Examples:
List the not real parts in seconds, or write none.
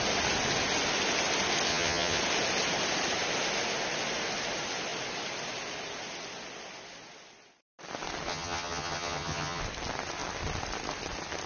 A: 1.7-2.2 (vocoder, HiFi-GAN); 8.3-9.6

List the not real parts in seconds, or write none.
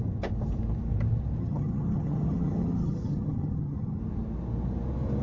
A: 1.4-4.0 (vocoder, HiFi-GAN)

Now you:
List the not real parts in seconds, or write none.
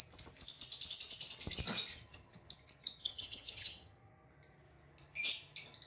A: 1.9-2.5 (vocoder, HiFi-GAN); 3.0-4.1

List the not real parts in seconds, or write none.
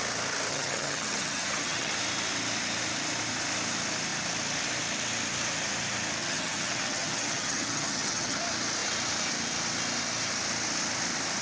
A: 0.5-1.9 (vocoder, HiFi-GAN); 6.2-8.4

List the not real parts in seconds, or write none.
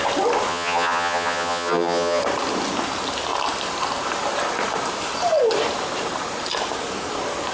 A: 0.5-2.2 (vocoder, HiFi-GAN)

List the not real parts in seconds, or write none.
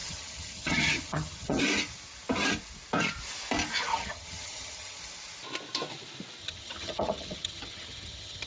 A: 0.0-1.6 (vocoder, HiFi-GAN); 3.9-5.0; 6.4-8.5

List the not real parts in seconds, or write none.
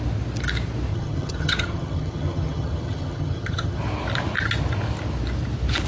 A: 0.9-3.8 (vocoder, HiFi-GAN)